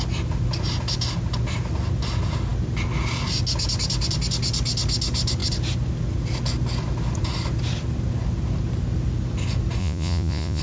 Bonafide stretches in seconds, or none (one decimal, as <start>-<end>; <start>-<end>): 0.0-9.8